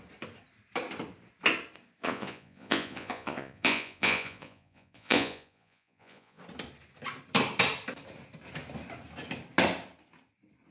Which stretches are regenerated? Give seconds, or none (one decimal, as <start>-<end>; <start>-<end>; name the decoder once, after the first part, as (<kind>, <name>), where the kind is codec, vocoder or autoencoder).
2.0-6.4 (vocoder, Vocos)